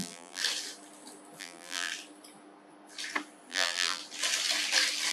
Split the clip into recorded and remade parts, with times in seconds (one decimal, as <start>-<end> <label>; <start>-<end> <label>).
0.0-0.4 remade; 0.4-1.4 recorded; 1.4-1.9 remade; 1.9-3.5 recorded; 3.5-4.0 remade; 4.0-5.1 recorded

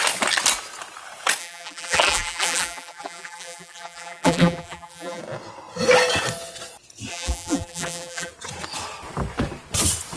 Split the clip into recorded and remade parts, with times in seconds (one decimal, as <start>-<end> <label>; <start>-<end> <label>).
0.0-1.4 recorded; 1.4-5.2 remade; 5.2-7.1 recorded; 7.1-8.3 remade; 8.3-10.2 recorded

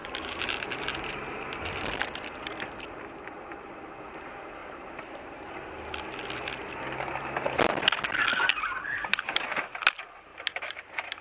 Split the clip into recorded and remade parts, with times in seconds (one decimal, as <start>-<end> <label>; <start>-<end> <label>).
0.0-1.4 remade; 1.4-4.6 recorded; 4.6-5.4 remade; 5.4-10.3 recorded; 10.3-11.2 remade